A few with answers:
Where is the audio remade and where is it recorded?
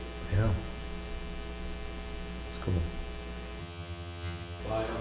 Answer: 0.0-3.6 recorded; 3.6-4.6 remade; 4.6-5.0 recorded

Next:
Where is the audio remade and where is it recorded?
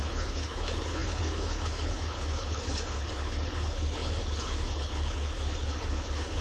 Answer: 0.0-6.4 remade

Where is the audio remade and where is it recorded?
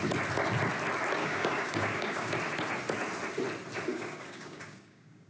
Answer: 0.0-1.2 recorded; 1.2-2.4 remade; 2.4-3.9 recorded; 3.9-5.3 remade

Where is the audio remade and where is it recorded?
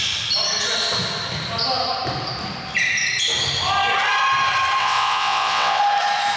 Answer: 0.0-4.8 recorded; 4.8-5.8 remade; 5.8-6.4 recorded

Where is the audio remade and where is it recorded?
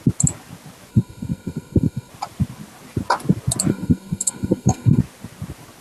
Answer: 0.0-0.9 recorded; 0.9-2.1 remade; 2.1-3.7 recorded; 3.7-5.0 remade; 5.0-5.8 recorded